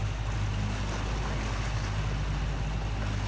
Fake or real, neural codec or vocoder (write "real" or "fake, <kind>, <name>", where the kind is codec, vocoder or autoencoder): real